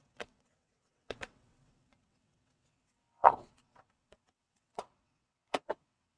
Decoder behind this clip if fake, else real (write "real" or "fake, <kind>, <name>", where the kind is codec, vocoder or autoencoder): fake, vocoder, WaveNeXt